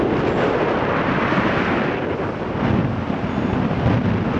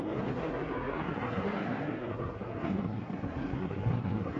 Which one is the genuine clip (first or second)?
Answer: first